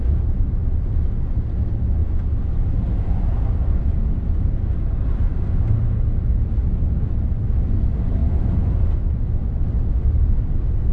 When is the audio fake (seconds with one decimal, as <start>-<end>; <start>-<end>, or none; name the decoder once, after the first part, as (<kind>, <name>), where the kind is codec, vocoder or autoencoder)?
none